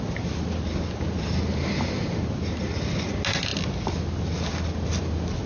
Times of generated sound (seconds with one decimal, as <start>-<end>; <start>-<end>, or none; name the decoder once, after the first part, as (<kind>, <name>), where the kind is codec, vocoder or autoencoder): none